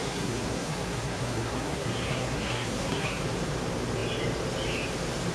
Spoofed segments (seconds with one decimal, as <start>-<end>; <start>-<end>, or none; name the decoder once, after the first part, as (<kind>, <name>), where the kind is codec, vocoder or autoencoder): 0.0-3.2 (codec, SNAC)